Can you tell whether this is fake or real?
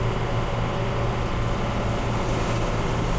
real